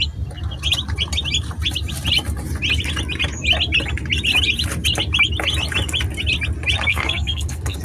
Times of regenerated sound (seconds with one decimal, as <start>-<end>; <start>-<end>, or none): 6.9-7.8